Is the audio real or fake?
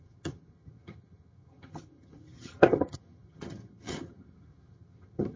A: fake